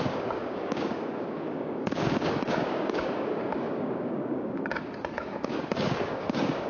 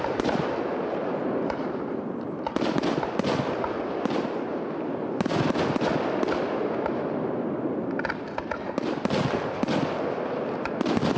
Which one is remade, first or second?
first